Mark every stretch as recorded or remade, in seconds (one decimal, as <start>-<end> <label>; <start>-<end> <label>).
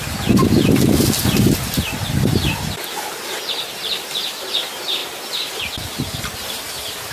0.0-7.1 recorded